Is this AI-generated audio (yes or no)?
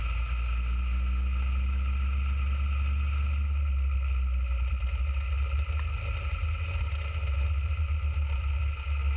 no